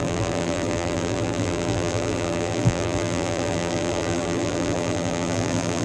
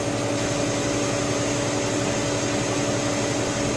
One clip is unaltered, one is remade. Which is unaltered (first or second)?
second